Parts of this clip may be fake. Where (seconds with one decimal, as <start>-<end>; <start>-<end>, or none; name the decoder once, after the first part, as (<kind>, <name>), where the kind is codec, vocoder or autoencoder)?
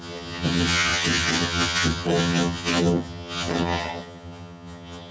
0.0-5.1 (vocoder, HiFi-GAN)